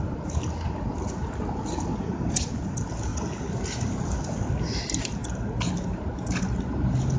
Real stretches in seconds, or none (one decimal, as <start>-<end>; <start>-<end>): 0.0-7.2